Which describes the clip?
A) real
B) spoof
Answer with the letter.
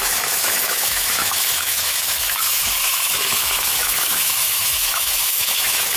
B